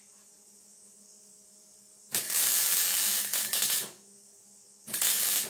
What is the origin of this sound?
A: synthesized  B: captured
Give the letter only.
A